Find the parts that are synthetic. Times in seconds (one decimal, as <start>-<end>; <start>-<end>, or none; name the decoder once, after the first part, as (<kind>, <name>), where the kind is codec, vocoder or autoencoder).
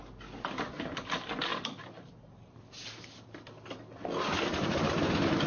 none